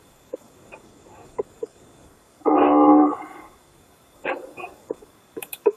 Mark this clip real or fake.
fake